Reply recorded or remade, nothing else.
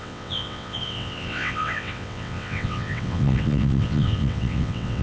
remade